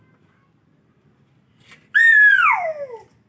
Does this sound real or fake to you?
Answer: real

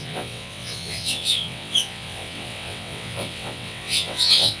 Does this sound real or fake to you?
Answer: fake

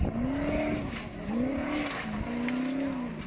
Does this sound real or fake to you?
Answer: real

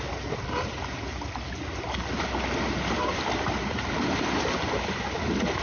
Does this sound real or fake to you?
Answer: real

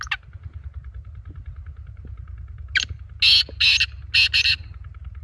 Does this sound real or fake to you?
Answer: real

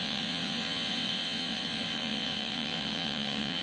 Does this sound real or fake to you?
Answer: fake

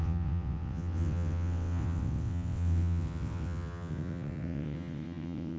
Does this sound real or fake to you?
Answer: fake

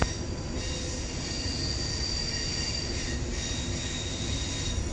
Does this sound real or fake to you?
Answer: real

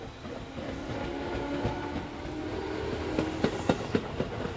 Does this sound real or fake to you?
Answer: real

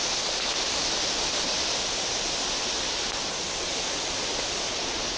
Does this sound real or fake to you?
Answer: real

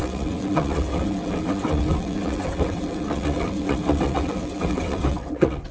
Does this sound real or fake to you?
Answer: fake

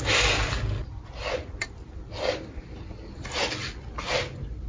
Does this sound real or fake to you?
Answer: real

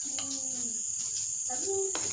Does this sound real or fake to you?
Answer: real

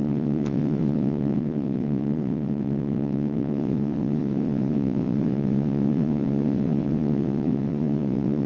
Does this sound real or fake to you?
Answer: fake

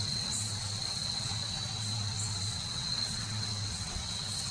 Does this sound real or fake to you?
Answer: fake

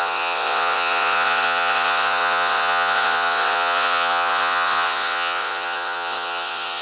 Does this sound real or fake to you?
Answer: fake